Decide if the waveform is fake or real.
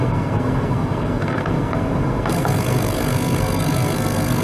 fake